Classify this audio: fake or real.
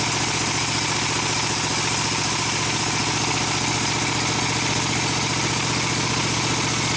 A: real